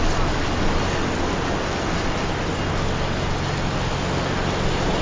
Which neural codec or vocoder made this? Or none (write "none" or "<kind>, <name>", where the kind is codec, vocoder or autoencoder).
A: none